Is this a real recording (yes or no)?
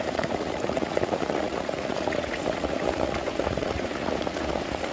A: no